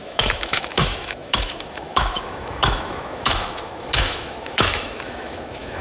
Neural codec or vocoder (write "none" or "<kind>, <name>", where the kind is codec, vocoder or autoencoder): autoencoder, DAC-VAE